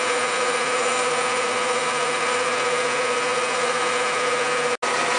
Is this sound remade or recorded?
recorded